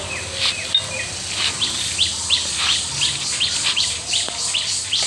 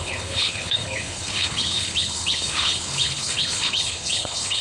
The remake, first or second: second